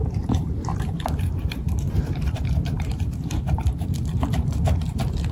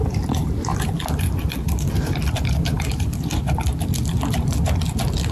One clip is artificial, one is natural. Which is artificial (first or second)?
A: first